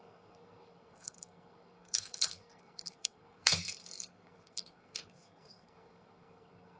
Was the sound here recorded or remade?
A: remade